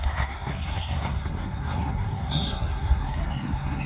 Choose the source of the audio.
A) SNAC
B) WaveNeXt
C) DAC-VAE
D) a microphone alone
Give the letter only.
A